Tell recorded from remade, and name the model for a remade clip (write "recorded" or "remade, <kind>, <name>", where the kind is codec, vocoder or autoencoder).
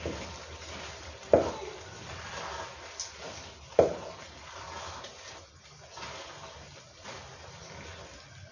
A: recorded